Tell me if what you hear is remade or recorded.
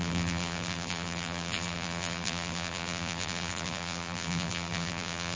remade